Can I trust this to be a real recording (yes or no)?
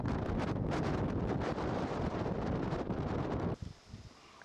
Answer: yes